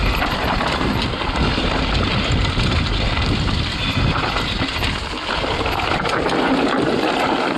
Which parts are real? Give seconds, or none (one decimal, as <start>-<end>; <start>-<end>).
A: 0.0-7.6